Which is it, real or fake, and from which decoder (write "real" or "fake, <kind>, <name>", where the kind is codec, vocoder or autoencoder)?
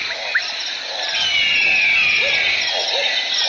real